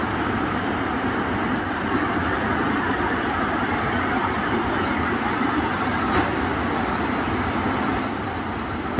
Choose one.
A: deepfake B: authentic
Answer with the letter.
B